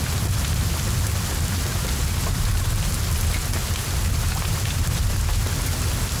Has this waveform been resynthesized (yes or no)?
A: no